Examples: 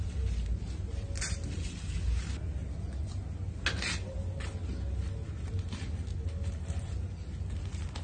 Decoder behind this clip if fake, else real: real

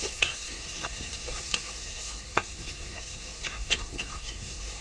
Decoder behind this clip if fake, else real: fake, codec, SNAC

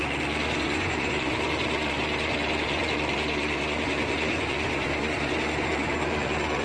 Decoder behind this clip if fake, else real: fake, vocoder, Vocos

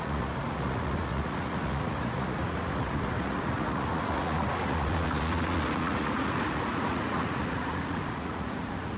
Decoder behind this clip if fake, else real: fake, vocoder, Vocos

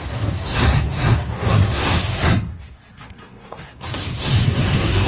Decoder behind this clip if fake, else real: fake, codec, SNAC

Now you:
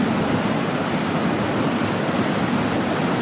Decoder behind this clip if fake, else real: fake, vocoder, BigVGAN v2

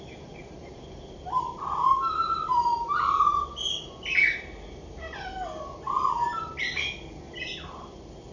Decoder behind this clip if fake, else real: real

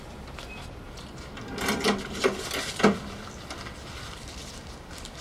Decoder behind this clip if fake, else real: real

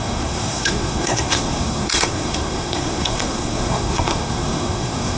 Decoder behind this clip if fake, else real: fake, codec, SNAC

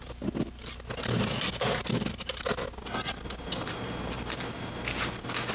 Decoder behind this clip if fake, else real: real